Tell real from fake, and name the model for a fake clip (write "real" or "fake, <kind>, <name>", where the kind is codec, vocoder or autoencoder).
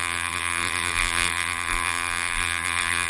fake, vocoder, BigVGAN v2